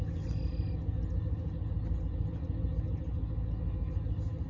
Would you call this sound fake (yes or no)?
no